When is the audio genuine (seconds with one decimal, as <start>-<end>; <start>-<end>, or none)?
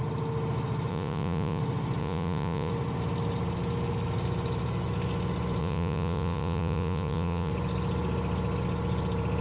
0.0-0.9; 1.6-2.0; 2.7-5.6; 7.5-9.4